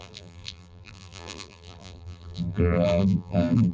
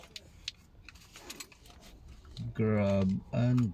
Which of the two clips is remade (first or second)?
first